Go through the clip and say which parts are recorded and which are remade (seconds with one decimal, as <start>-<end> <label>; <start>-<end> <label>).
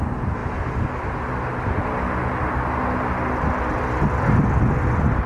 0.0-5.3 recorded